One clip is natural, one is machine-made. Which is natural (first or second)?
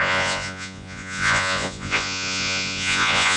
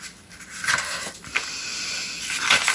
second